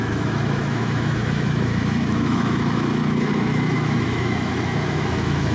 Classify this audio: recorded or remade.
remade